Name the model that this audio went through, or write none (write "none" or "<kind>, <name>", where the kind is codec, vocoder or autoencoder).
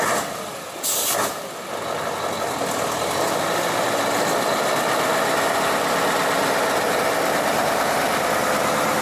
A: none